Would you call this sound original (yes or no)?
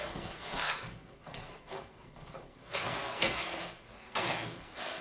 no